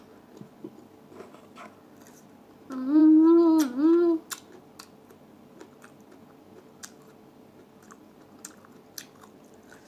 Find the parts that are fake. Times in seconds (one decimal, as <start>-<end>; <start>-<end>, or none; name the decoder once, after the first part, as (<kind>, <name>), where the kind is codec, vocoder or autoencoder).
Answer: none

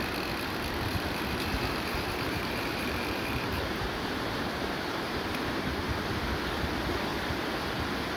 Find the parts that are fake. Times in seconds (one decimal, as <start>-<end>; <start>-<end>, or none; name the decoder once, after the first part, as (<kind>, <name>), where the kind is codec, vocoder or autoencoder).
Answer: 0.9-5.8 (vocoder, BigVGAN v2); 7.1-7.7

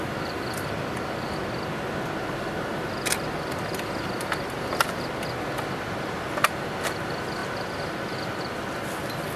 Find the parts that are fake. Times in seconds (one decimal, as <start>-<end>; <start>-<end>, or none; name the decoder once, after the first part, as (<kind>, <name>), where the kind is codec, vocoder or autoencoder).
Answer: none

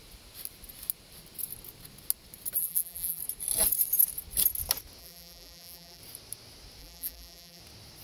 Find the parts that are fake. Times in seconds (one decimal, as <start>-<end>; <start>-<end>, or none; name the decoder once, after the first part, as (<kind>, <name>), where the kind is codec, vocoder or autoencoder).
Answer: 2.6-3.2 (vocoder, BigVGAN v2); 5.0-6.0; 6.8-7.6